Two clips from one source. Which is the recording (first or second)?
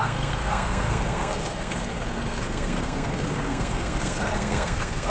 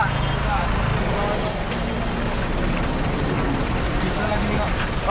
second